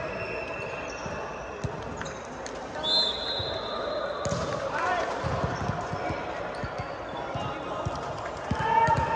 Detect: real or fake real